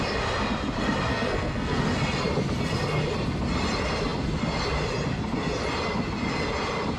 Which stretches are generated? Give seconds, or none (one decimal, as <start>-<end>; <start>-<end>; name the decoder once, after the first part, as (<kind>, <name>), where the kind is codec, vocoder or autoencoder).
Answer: 1.1-1.8 (codec, SNAC)